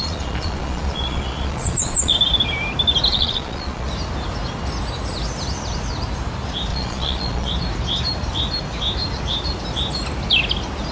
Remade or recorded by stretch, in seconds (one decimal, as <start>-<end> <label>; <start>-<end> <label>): 0.0-2.1 remade; 2.1-3.1 recorded; 3.1-3.9 remade; 3.9-6.7 recorded; 6.7-7.5 remade; 7.5-10.9 recorded